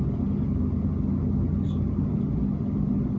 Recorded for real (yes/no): yes